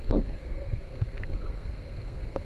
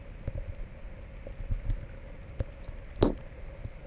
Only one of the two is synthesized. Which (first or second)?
first